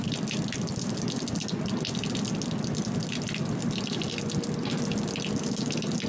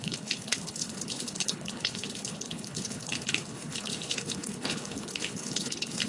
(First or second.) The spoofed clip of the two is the second